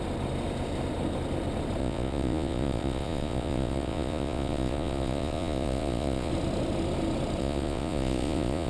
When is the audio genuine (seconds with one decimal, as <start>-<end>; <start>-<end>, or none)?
0.0-1.8; 6.3-7.4